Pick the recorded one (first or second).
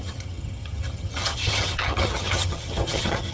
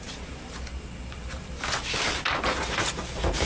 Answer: second